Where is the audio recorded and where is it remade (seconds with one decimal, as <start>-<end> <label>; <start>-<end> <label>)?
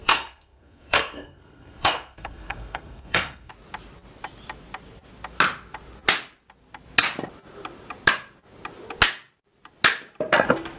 0.0-3.5 remade; 3.5-10.8 recorded